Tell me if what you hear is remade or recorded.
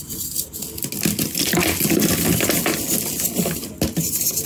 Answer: recorded